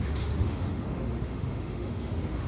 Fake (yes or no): yes